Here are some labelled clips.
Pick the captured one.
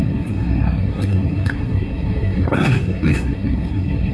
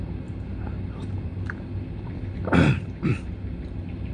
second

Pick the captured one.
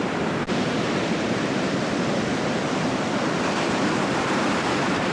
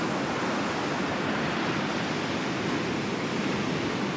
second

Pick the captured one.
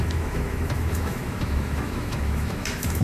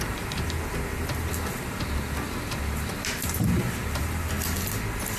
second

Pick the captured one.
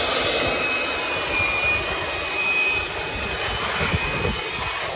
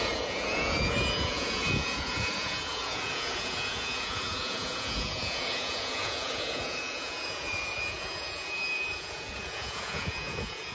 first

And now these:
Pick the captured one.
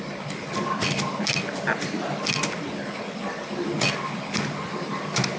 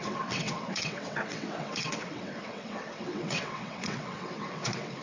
first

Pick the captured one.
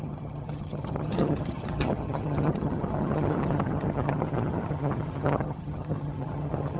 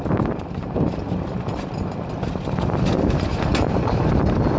second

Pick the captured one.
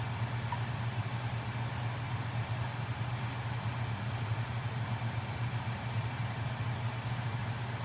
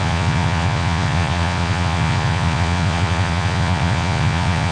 first